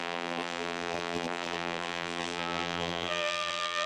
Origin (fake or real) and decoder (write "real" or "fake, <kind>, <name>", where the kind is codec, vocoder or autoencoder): fake, vocoder, BigVGAN v2